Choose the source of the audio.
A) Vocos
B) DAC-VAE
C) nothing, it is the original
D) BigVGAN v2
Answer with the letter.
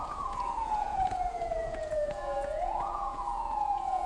A